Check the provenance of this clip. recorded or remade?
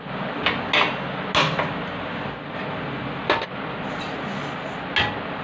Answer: recorded